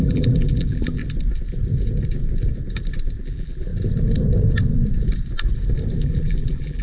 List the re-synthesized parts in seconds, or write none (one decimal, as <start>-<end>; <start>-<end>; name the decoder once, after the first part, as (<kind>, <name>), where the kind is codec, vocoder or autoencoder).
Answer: 0.0-1.0 (vocoder, BigVGAN v2); 3.2-3.7; 6.0-6.8

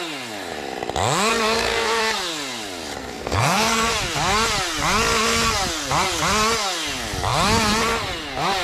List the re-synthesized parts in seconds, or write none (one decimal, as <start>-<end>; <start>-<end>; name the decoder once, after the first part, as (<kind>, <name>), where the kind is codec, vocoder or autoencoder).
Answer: 1.3-2.0 (codec, SNAC); 3.0-3.9

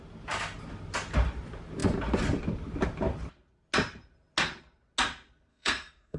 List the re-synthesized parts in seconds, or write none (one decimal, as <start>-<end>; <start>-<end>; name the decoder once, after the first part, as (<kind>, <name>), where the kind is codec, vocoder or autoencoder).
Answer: 5.5-6.2 (codec, SNAC)

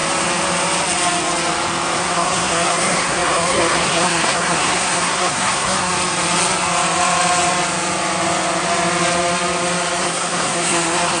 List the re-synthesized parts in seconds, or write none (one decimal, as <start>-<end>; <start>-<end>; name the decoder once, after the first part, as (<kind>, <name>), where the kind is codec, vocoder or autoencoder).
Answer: 2.0-5.9 (codec, SNAC); 10.0-11.2

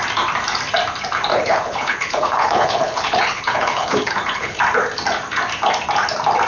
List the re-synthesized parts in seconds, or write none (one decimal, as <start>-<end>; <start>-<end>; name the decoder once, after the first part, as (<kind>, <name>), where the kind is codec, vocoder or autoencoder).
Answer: 1.3-4.6 (codec, HILCodec)

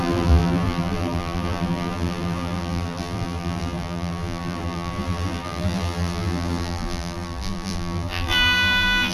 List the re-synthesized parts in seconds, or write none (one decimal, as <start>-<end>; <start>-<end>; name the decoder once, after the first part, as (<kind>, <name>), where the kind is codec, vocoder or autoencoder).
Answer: 0.0-9.1 (vocoder, BigVGAN v2)

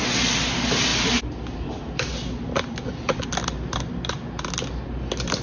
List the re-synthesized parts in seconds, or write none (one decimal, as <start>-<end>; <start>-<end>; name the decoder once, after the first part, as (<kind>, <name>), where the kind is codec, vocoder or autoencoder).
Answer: none